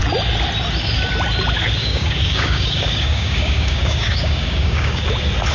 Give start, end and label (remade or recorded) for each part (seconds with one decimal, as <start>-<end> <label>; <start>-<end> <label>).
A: 0.0-1.8 recorded; 1.8-5.0 remade; 5.0-5.5 recorded